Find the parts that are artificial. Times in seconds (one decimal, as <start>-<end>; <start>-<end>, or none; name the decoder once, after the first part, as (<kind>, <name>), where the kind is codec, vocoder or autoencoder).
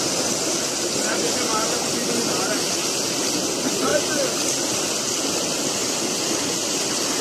none